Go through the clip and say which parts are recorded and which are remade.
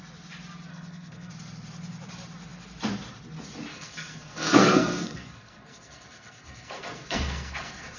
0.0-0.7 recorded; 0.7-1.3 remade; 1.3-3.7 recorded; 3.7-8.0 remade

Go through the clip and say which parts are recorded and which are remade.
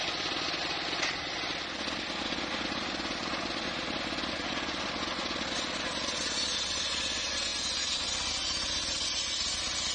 0.0-9.9 recorded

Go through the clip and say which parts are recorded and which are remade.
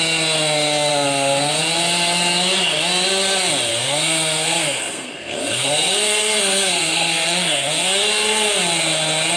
0.0-0.9 recorded; 0.9-1.6 remade; 1.6-3.7 recorded; 3.7-8.5 remade; 8.5-9.4 recorded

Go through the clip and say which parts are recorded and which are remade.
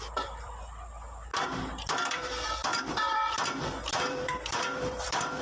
0.0-1.3 remade; 1.3-2.1 recorded; 2.1-5.4 remade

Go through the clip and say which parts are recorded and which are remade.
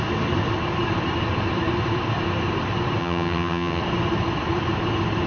0.0-3.0 recorded; 3.0-3.8 remade; 3.8-5.3 recorded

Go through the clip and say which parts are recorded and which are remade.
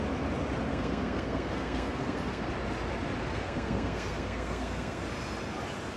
0.0-0.7 recorded; 0.7-2.5 remade; 2.5-3.2 recorded; 3.2-5.0 remade; 5.0-6.0 recorded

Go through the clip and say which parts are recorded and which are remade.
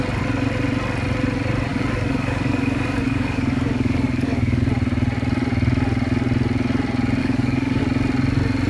0.0-1.7 recorded; 1.7-4.6 remade; 4.6-7.2 recorded; 7.2-7.8 remade; 7.8-8.7 recorded